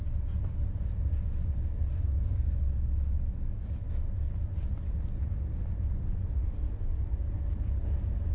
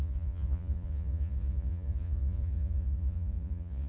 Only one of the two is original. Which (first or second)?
first